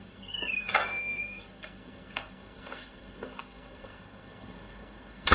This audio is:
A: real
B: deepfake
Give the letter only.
B